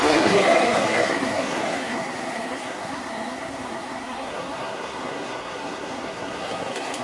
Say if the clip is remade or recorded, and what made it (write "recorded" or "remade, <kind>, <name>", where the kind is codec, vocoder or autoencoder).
remade, codec, SNAC